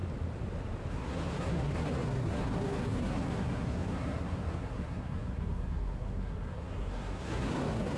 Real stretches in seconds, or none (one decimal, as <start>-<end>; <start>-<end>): 0.0-0.9